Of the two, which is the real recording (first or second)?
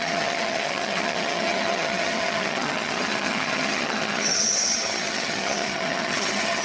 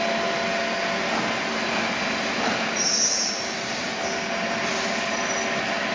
second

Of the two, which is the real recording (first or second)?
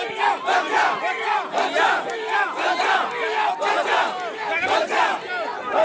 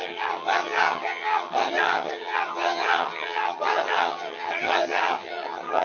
first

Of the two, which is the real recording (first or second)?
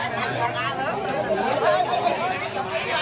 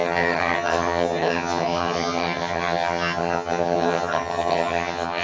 first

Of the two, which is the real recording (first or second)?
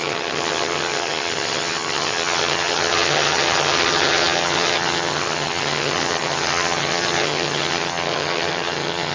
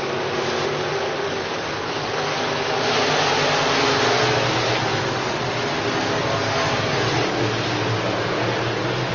second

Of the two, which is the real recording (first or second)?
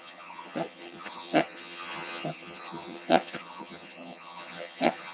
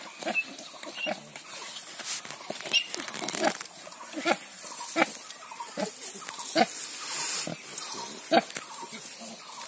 second